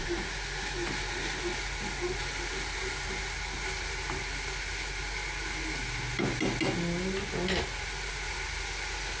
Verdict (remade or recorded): recorded